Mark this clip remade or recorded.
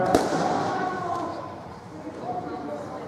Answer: remade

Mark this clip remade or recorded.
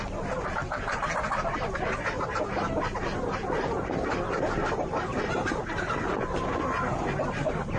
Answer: recorded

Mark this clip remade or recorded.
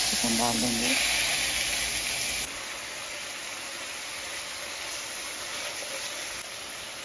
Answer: recorded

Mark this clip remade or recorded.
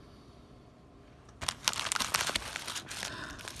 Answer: recorded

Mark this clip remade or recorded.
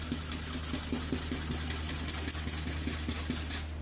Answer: recorded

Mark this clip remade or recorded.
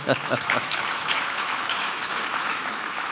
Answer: remade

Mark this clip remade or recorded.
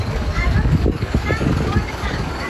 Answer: remade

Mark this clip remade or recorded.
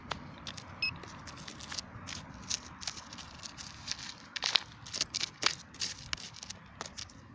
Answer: recorded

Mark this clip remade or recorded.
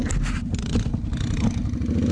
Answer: recorded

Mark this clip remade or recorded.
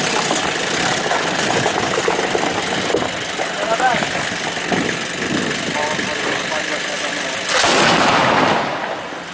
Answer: recorded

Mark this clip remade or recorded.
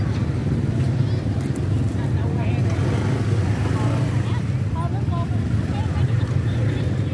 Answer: recorded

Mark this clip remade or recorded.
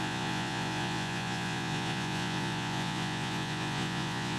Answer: remade